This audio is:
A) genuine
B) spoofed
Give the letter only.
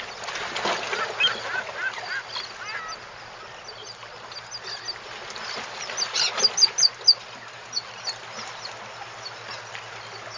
A